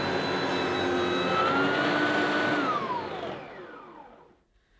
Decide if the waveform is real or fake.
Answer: real